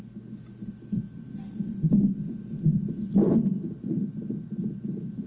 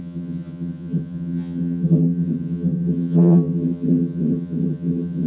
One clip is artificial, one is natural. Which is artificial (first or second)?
second